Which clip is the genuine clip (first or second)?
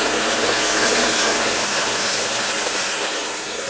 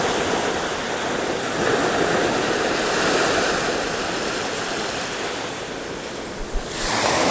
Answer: second